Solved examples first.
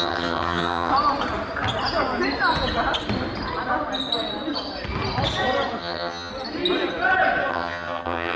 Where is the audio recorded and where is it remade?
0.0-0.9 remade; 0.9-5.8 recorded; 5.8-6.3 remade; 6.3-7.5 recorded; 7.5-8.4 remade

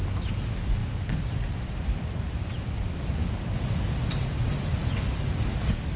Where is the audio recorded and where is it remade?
0.0-6.0 recorded

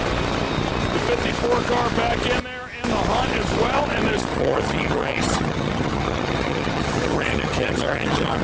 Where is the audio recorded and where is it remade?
0.0-4.3 recorded; 4.3-8.4 remade

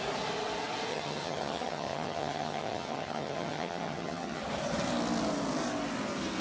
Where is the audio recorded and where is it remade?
0.0-0.9 recorded; 0.9-4.4 remade; 4.4-6.4 recorded

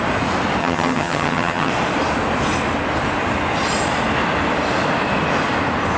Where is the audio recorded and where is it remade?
0.0-0.6 recorded; 0.6-1.7 remade; 1.7-6.0 recorded

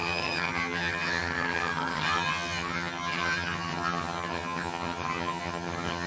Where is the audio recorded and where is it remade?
0.0-6.1 remade

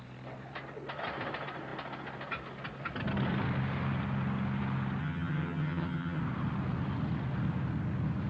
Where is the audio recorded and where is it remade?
0.0-5.0 recorded; 5.0-6.2 remade; 6.2-8.3 recorded

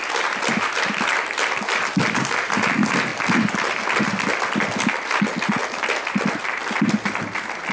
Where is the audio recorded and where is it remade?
0.0-7.7 recorded